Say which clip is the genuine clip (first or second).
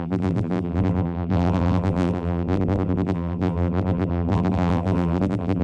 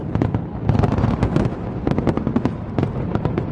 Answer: second